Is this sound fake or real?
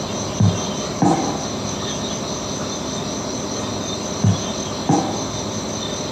real